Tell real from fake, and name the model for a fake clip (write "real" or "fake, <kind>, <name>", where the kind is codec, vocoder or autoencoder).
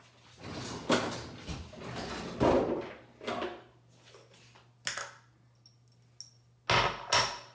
real